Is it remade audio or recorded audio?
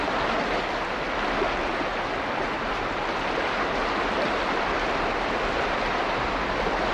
recorded